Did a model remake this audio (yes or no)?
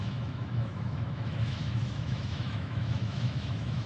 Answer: yes